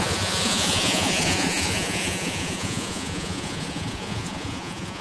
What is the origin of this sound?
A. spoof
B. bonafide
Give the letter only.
A